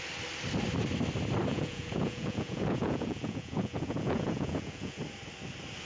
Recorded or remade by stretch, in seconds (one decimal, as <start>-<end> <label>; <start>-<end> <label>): 0.0-1.5 recorded; 1.5-5.0 remade; 5.0-5.9 recorded